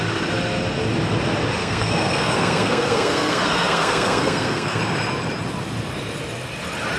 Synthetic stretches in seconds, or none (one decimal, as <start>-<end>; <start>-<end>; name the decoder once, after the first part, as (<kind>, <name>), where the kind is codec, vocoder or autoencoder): 1.6-4.8 (codec, SNAC)